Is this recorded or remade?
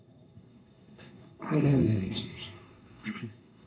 remade